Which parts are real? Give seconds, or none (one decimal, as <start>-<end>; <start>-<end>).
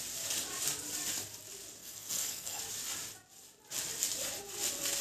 0.0-1.8; 2.6-5.0